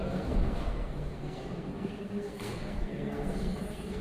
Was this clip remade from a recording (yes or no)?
yes